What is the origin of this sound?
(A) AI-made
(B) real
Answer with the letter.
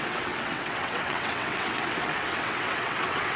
A